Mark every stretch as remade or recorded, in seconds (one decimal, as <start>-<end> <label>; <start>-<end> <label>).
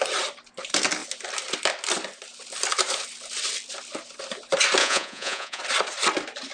0.0-4.8 recorded; 4.8-5.6 remade; 5.6-6.5 recorded